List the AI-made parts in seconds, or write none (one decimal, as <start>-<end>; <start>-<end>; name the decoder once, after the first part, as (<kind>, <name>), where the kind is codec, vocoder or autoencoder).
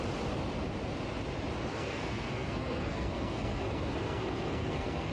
1.7-5.1 (codec, SNAC)